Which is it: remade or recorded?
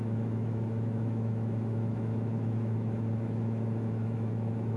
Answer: remade